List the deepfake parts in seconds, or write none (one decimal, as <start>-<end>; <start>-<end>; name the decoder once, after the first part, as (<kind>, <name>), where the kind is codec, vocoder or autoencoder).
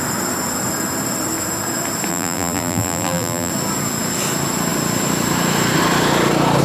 2.1-3.5 (vocoder, BigVGAN v2)